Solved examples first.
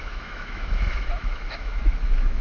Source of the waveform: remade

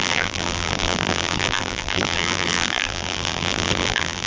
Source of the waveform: remade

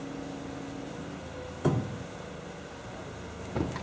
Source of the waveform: recorded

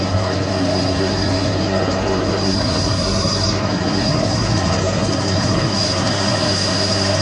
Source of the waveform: remade